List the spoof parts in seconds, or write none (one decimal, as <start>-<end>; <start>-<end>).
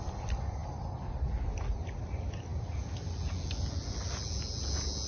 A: none